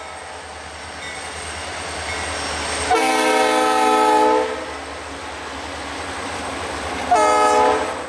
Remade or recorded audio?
recorded